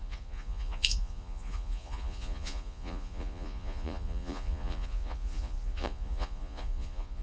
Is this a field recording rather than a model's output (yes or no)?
no